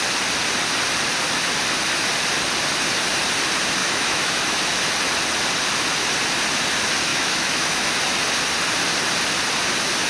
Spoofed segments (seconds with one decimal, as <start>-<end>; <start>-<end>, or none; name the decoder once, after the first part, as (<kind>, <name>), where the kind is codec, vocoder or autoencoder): 3.8-4.6 (autoencoder, DAC-VAE); 7.1-8.0